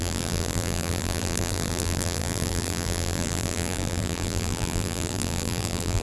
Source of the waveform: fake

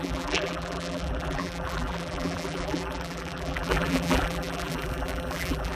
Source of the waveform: fake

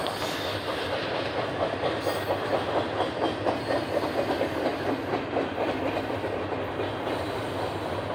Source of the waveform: real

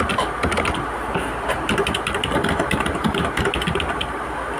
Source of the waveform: real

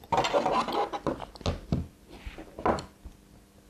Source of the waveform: real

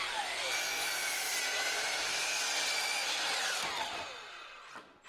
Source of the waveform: real